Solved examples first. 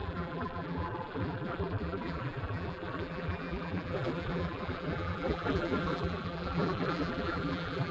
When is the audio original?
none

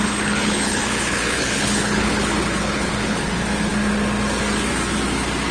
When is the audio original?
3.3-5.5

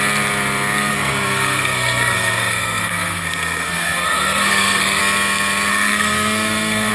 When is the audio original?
0.0-0.9; 5.0-5.7